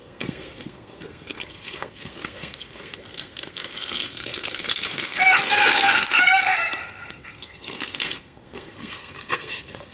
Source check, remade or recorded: remade